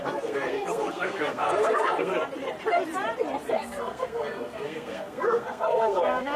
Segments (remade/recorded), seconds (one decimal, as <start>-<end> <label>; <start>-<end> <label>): 0.0-2.1 remade; 2.1-3.5 recorded; 3.5-6.4 remade